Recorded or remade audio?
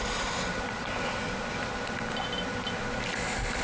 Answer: recorded